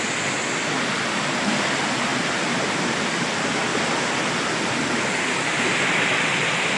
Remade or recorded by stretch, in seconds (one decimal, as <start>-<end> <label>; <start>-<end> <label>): 0.0-6.8 recorded